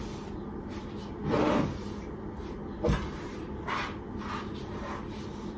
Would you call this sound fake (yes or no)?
no